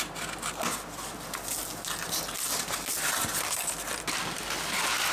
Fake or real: real